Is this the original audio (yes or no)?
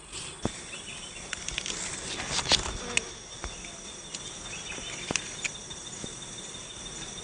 yes